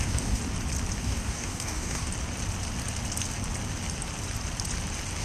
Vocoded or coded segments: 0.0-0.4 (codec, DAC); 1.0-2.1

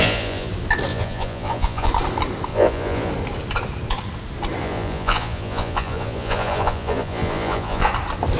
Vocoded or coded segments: 0.0-0.5 (vocoder, Vocos); 0.9-1.9; 2.5-3.1; 4.6-7.9